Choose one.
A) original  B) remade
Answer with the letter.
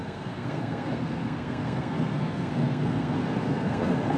B